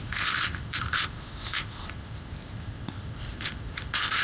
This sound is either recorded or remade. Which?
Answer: remade